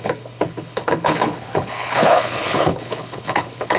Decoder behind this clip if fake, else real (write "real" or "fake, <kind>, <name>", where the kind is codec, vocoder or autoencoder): fake, codec, HILCodec